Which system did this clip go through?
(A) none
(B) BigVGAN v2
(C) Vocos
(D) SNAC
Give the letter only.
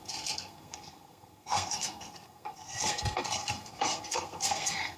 D